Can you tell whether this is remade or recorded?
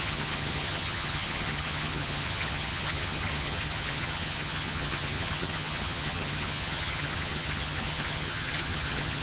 remade